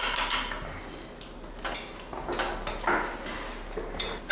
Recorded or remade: recorded